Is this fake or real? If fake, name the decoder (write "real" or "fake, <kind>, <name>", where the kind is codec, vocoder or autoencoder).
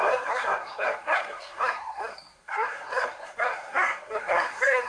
fake, codec, SNAC